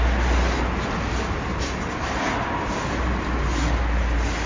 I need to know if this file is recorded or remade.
recorded